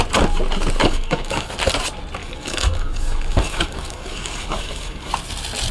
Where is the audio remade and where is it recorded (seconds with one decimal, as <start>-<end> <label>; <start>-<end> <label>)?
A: 0.0-0.8 recorded; 0.8-1.5 remade; 1.5-2.2 recorded; 2.2-5.1 remade; 5.1-5.7 recorded